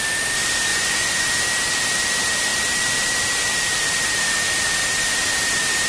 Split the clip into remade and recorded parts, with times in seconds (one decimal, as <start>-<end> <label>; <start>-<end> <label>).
0.0-0.7 recorded; 0.7-1.2 remade; 1.2-5.9 recorded